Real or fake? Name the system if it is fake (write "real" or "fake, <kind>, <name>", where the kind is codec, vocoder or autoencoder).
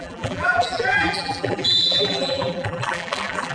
fake, vocoder, BigVGAN v2